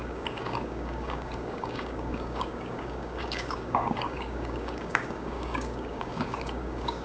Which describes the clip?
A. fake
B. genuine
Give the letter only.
A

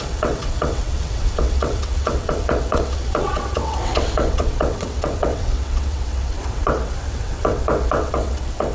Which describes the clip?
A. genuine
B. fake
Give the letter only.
B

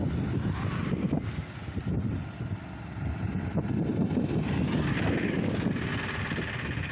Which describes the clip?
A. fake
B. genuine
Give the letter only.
B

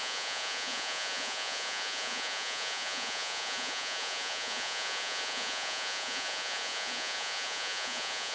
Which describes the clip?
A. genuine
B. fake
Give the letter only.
B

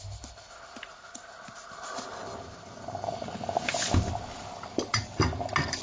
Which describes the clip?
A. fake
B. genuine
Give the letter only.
B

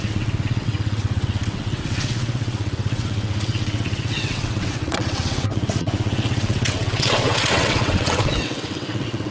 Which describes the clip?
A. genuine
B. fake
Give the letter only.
B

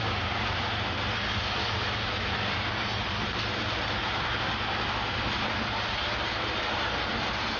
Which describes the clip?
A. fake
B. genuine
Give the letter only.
B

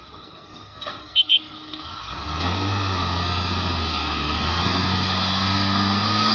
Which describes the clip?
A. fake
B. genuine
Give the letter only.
A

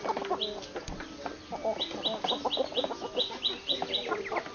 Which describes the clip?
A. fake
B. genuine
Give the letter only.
B